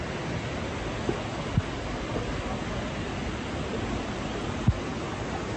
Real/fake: real